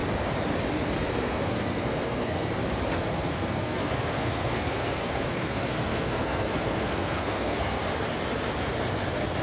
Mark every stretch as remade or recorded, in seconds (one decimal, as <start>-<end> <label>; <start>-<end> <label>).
0.0-1.0 recorded; 1.0-2.5 remade; 2.5-2.9 recorded; 2.9-7.8 remade; 7.8-9.4 recorded